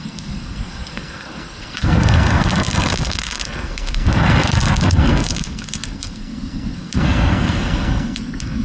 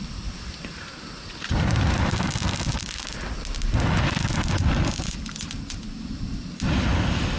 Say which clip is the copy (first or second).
first